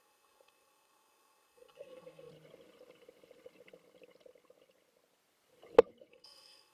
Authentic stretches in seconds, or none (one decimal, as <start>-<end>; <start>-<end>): 2.3-6.1